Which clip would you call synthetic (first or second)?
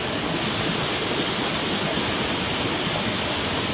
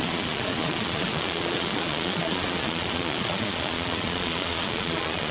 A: second